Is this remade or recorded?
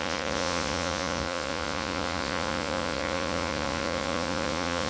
remade